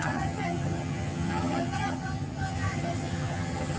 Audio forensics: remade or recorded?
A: remade